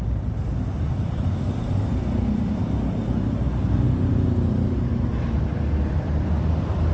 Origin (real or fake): real